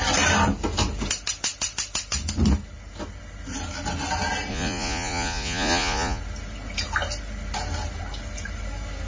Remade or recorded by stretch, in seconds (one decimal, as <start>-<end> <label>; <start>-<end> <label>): 0.0-4.5 recorded; 4.5-6.2 remade; 6.2-9.1 recorded